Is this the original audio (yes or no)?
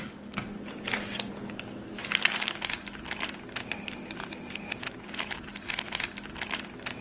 yes